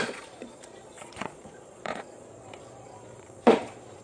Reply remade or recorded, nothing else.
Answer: remade